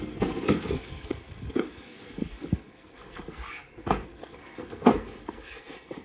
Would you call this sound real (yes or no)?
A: no